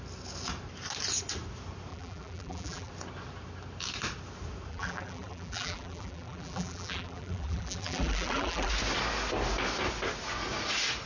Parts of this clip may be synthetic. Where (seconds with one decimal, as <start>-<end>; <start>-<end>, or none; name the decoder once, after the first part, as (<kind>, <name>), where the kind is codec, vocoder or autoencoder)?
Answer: 1.9-2.9 (vocoder, BigVGAN v2); 4.7-8.7